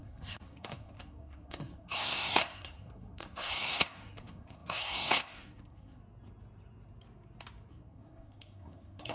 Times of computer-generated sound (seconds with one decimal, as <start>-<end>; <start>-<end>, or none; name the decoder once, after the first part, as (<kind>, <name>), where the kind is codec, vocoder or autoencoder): 0.0-6.0 (codec, SNAC); 7.7-9.1